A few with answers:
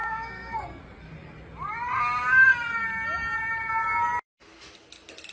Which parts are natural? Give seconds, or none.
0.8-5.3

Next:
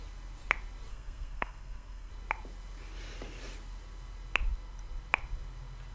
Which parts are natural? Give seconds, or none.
0.0-0.9; 2.1-5.9